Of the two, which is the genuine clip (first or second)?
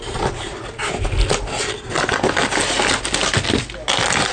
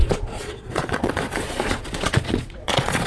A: first